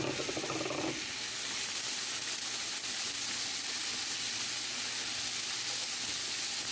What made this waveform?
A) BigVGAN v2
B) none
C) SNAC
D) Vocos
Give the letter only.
B